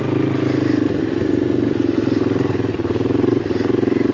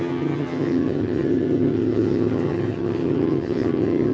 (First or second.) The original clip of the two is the first